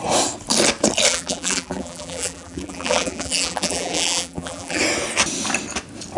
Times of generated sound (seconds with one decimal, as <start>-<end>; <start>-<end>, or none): 1.1-4.8